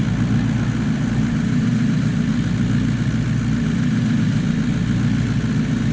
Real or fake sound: real